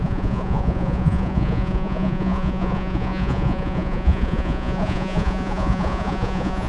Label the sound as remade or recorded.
remade